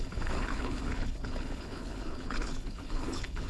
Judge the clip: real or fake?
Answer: fake